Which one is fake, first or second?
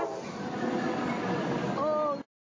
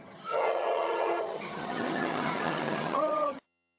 second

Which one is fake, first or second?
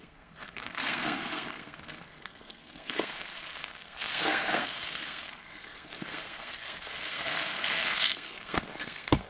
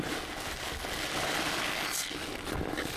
first